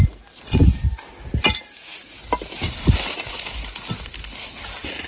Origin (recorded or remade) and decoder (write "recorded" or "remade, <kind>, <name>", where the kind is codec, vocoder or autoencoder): recorded